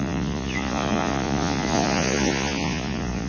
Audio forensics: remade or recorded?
remade